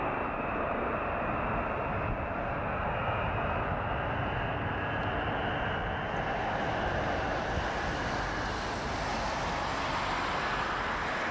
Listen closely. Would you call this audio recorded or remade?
recorded